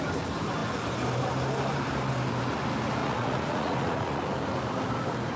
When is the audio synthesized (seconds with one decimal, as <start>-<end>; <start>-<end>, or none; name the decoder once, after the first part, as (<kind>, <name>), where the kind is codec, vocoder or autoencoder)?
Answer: 3.0-4.2 (vocoder, Vocos)

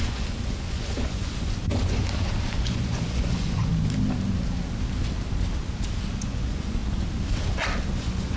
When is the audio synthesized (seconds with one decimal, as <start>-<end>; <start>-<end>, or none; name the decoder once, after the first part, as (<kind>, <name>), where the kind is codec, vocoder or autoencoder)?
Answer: 0.0-2.0 (vocoder, Vocos); 2.6-3.7; 6.2-6.8; 8.0-8.4

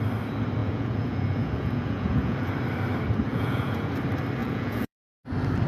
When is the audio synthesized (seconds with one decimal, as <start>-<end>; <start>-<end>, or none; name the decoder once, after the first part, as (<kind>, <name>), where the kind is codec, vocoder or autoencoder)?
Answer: 0.6-2.5 (vocoder, Vocos); 3.3-3.9; 4.4-5.0

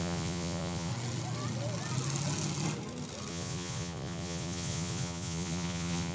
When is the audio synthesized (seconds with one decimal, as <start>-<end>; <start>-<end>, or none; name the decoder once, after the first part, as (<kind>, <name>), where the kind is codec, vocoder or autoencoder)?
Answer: 0.0-0.9 (vocoder, Vocos); 3.3-6.1